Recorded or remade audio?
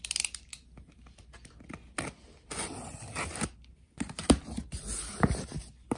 recorded